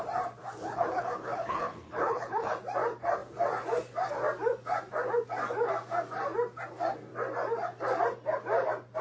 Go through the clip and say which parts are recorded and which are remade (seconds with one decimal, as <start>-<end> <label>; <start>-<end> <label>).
0.0-0.4 recorded; 0.4-2.5 remade; 2.5-9.0 recorded